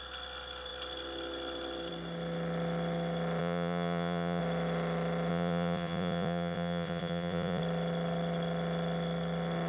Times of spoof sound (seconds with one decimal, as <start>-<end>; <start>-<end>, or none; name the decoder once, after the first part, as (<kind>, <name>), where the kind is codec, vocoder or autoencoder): 3.4-4.4 (vocoder, Vocos); 5.3-7.6